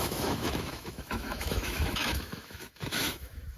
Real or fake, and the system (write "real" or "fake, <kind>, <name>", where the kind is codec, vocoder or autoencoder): fake, autoencoder, DAC-VAE